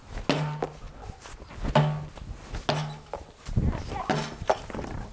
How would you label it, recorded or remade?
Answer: recorded